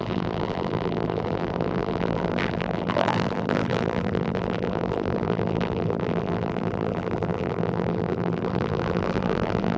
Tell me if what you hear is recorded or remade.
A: remade